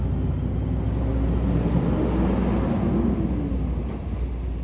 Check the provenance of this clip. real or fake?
real